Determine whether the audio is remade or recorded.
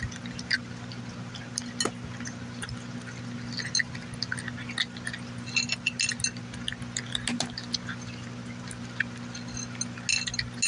recorded